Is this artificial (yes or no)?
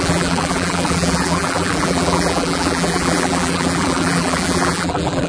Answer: yes